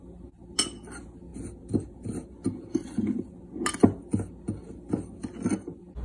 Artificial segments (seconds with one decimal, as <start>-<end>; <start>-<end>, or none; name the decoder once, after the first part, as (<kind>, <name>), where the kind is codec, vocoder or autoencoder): none